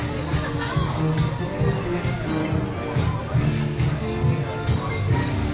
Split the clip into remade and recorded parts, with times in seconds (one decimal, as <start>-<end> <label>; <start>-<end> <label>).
0.0-2.4 remade; 2.4-3.2 recorded; 3.2-5.5 remade